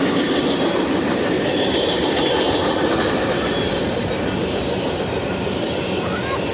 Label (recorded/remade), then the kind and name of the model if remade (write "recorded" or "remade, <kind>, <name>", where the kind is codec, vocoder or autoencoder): recorded